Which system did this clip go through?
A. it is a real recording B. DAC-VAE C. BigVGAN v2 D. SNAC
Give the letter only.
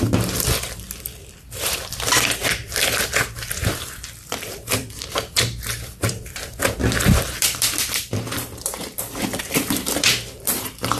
C